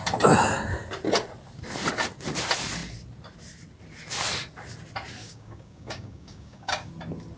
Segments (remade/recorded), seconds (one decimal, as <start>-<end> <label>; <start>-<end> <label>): 0.0-5.2 recorded; 5.2-6.9 remade; 6.9-7.4 recorded